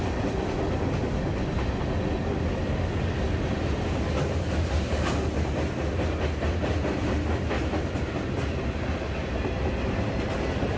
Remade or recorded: recorded